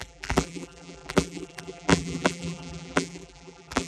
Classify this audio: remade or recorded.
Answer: remade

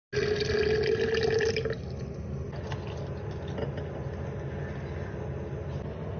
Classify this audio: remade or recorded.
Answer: recorded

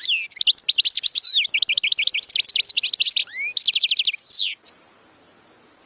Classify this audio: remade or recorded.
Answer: recorded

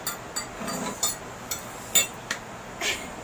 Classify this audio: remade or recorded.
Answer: recorded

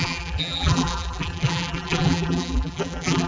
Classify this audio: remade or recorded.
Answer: remade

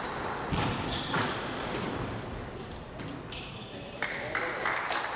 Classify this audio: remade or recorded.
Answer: remade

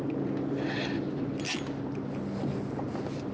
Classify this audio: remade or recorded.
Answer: recorded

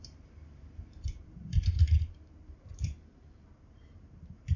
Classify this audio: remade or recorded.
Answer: remade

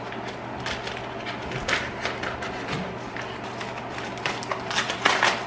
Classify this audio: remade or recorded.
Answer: recorded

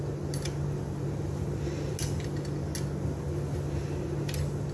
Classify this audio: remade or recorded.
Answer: recorded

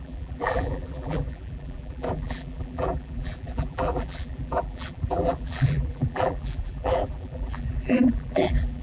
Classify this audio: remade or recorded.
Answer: remade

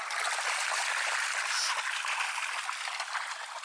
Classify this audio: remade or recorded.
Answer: recorded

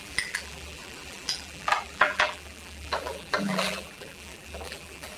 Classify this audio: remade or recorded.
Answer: remade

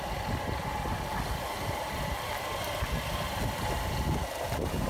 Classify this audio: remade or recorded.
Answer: recorded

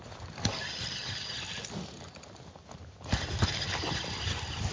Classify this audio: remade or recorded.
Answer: recorded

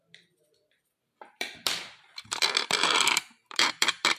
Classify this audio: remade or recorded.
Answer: remade